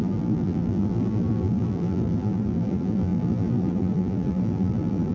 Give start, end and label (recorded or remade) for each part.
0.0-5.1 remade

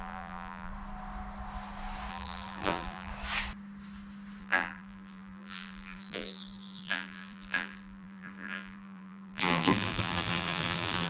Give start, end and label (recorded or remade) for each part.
0.0-0.7 remade; 0.7-2.1 recorded; 2.1-3.1 remade; 3.1-4.4 recorded; 4.4-11.1 remade